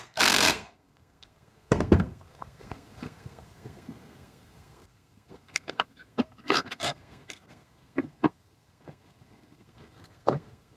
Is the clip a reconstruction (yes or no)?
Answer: yes